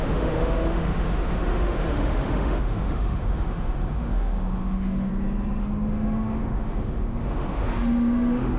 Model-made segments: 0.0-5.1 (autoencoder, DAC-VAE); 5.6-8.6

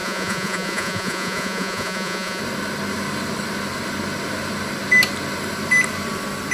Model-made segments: 0.0-2.4 (vocoder, Vocos)

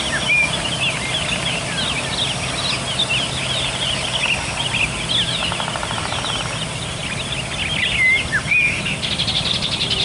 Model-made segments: none

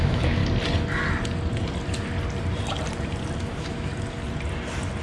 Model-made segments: 0.0-0.4 (autoencoder, DAC-VAE); 3.4-3.9

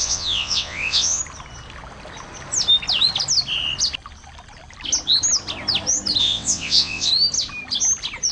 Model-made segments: 0.0-1.2 (vocoder, WaveNeXt); 6.2-7.1

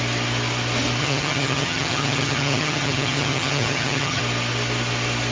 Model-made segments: 1.0-4.2 (vocoder, HiFi-GAN)

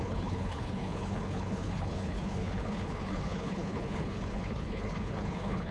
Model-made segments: 0.0-5.7 (codec, HILCodec)

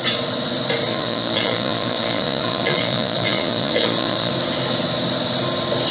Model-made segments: 0.9-4.3 (vocoder, Vocos)